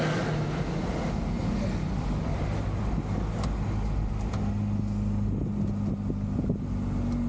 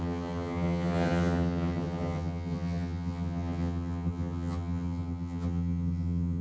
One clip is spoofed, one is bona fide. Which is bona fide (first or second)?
first